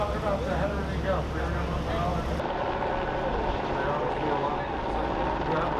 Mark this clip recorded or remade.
recorded